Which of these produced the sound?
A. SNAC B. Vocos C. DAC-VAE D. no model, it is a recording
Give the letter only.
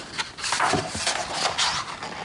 D